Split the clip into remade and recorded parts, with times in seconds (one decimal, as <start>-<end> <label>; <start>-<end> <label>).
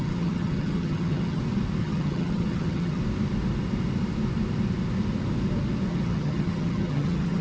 0.0-1.4 remade; 1.4-1.8 recorded; 1.8-3.0 remade; 3.0-5.9 recorded; 5.9-7.4 remade